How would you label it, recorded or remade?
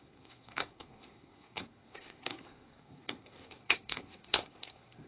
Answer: remade